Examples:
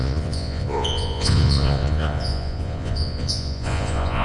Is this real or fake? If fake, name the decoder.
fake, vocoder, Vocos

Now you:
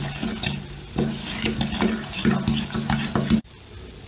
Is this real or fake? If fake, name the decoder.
real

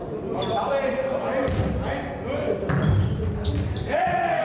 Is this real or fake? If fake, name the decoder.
real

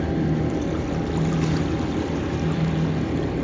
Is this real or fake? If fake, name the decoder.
real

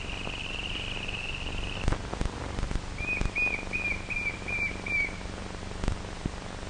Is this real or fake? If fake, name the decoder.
real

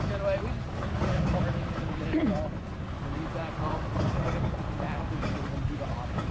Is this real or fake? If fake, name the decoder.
real